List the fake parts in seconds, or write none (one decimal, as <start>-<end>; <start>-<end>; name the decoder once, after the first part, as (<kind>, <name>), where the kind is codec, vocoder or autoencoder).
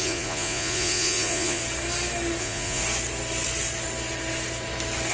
0.0-1.6 (vocoder, Vocos); 2.4-2.8